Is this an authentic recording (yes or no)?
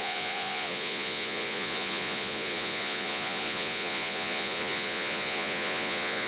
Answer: no